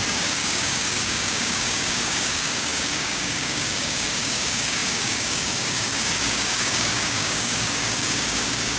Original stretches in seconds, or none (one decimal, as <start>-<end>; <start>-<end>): none